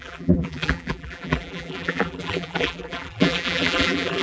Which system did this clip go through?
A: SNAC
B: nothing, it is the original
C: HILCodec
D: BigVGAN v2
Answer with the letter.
D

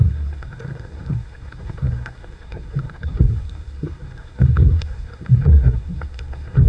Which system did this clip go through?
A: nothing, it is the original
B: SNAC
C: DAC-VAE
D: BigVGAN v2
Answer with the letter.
B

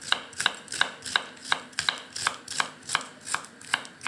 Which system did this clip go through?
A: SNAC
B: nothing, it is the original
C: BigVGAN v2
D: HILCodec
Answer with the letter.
B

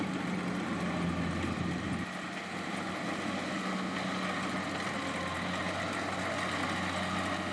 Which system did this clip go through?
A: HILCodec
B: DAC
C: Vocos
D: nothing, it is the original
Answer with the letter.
D